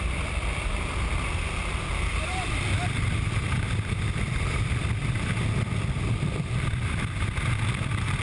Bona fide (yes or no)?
no